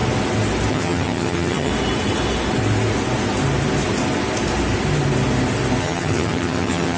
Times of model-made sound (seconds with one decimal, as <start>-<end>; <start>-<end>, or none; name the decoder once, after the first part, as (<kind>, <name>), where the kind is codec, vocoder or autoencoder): 0.7-1.7 (vocoder, HiFi-GAN); 5.8-7.0